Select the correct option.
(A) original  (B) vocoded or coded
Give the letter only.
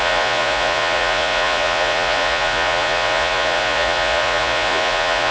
B